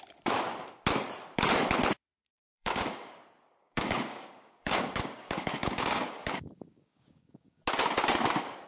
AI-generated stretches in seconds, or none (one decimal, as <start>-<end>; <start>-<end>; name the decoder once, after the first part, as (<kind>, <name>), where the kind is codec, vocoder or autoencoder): 2.3-3.2 (codec, DAC); 3.6-7.6